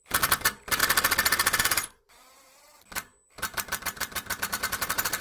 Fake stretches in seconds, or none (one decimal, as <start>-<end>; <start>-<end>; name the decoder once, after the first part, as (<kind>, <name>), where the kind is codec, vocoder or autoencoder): 0.0-0.8 (vocoder, BigVGAN v2); 2.0-3.1; 3.8-5.2